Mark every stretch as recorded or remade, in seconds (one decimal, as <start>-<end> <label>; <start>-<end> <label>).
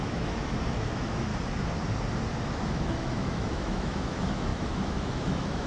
0.0-1.3 remade; 1.3-2.5 recorded; 2.5-5.7 remade